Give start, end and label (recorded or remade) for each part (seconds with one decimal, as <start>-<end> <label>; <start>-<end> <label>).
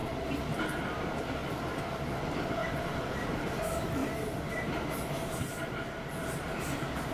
0.0-2.6 recorded; 2.6-3.6 remade; 3.6-7.1 recorded